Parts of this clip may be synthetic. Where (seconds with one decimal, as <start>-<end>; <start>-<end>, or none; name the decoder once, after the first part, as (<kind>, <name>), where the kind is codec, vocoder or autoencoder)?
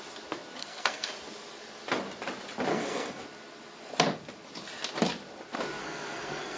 0.6-1.1 (codec, SNAC); 2.7-3.2; 5.8-6.6